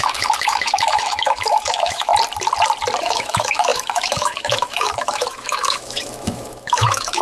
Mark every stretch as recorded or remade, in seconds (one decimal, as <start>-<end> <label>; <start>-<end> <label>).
0.0-2.1 remade; 2.1-3.0 recorded; 3.0-7.2 remade